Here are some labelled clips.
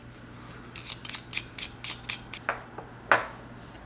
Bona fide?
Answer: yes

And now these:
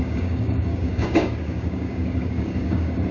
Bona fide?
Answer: no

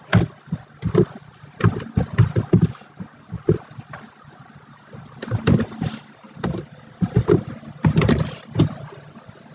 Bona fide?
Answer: yes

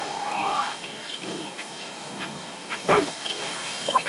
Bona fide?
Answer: no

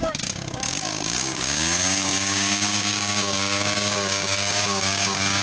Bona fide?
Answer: no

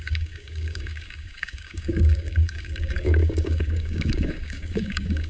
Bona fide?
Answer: no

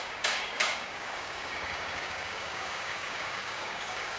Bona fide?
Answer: no